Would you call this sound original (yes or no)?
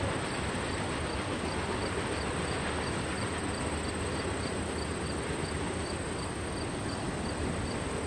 yes